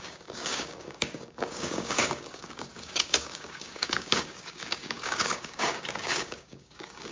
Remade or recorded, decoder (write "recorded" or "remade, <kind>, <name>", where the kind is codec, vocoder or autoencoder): remade, codec, DAC